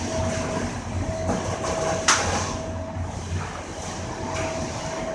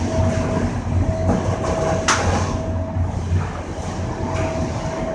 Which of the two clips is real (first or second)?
second